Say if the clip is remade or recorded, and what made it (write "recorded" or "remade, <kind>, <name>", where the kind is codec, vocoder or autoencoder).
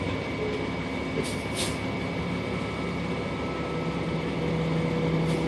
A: recorded